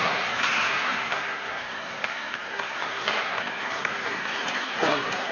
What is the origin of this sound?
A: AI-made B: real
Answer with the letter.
A